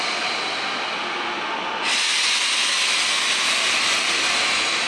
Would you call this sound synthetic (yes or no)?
no